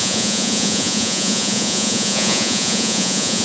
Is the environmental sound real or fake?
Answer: fake